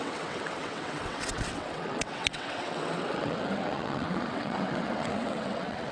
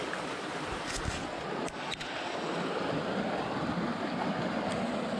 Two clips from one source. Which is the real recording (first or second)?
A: second